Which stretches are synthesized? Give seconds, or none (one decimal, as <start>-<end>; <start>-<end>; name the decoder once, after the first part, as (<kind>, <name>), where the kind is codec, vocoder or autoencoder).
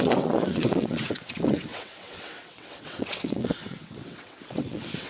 0.0-5.1 (vocoder, WaveNeXt)